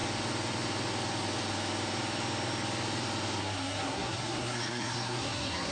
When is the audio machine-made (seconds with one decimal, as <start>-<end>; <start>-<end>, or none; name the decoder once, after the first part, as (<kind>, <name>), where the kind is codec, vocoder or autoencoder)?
3.4-5.7 (codec, SNAC)